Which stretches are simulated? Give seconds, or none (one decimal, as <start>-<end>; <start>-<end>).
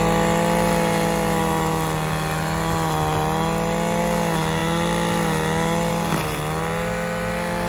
none